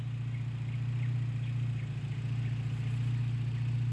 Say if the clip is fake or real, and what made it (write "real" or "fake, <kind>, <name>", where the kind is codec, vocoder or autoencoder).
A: real